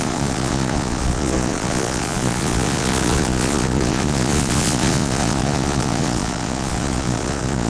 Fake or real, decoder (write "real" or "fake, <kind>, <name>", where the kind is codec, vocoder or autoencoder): fake, vocoder, Vocos